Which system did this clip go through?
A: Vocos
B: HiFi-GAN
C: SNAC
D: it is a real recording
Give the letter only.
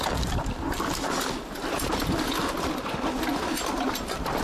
D